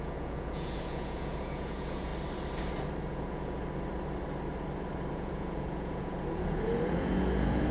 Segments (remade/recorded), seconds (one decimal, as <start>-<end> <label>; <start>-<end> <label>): 0.0-2.1 remade; 2.1-3.0 recorded; 3.0-3.6 remade; 3.6-5.1 recorded; 5.1-7.7 remade